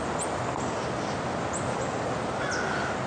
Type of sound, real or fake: real